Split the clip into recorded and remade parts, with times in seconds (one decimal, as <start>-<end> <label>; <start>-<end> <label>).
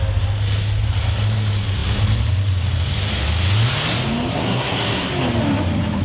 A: 0.0-4.3 recorded; 4.3-5.1 remade; 5.1-6.0 recorded